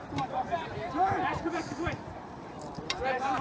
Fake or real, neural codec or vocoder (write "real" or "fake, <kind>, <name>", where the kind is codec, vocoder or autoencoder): fake, vocoder, BigVGAN v2